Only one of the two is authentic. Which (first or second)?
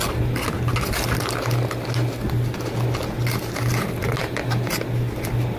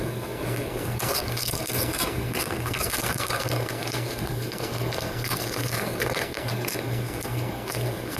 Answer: first